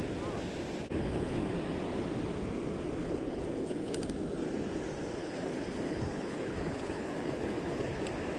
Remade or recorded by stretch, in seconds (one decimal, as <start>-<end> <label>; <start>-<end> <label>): 0.0-1.0 recorded; 1.0-1.5 remade; 1.5-3.0 recorded; 3.0-4.0 remade; 4.0-5.2 recorded; 5.2-8.0 remade; 8.0-8.4 recorded